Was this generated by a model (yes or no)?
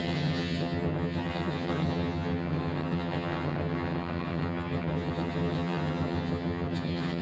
yes